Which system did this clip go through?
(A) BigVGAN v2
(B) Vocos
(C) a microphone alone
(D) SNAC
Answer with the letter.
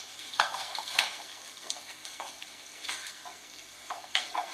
D